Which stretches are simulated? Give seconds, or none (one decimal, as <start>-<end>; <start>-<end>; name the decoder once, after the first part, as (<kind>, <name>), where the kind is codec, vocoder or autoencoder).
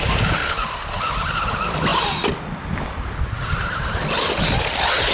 0.4-1.0 (vocoder, Vocos)